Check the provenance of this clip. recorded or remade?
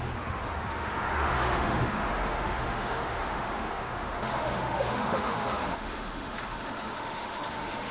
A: remade